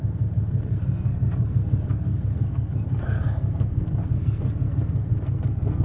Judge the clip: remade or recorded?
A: remade